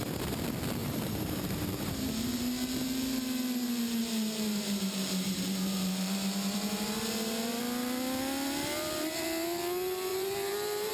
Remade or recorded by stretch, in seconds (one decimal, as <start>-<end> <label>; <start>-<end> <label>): 0.0-0.8 recorded; 0.8-2.1 remade; 2.1-4.0 recorded; 4.0-7.6 remade; 7.6-10.1 recorded; 10.1-10.9 remade